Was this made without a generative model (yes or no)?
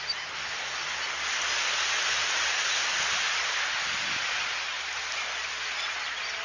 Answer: yes